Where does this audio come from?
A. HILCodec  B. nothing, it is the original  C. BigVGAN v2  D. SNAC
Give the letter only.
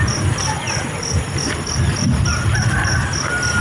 B